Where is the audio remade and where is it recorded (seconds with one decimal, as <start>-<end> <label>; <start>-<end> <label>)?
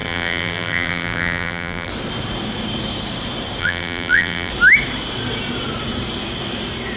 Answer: 0.0-1.9 remade; 1.9-3.6 recorded; 3.6-4.5 remade; 4.5-7.0 recorded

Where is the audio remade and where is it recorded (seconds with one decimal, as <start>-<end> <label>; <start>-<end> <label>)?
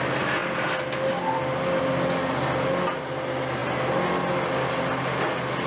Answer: 0.0-5.7 recorded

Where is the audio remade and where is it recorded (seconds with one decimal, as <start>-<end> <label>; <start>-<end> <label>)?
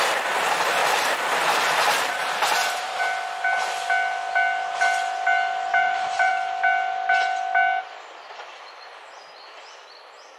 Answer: 0.0-0.8 recorded; 0.8-3.0 remade; 3.0-5.7 recorded; 5.7-6.3 remade; 6.3-10.4 recorded